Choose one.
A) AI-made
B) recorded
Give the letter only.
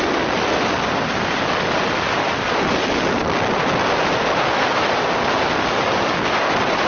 B